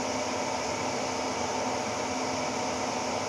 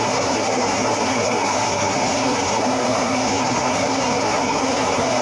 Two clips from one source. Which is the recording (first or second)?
first